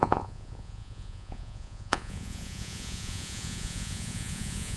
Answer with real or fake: fake